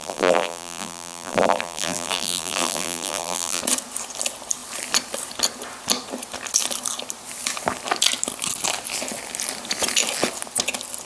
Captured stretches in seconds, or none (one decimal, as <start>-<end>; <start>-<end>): 3.6-11.1